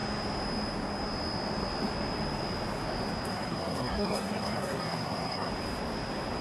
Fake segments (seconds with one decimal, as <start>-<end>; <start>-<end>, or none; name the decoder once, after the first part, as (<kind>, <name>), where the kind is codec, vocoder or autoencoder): 3.3-5.5 (codec, SNAC)